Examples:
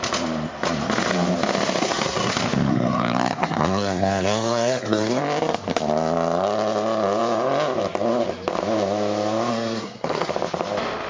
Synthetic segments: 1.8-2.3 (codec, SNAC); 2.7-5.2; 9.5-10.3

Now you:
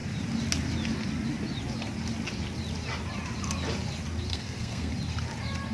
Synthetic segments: 4.3-4.9 (codec, SNAC)